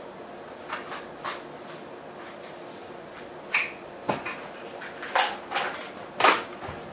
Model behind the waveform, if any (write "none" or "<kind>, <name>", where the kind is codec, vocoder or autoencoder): none